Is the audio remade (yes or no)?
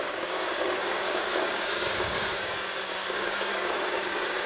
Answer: yes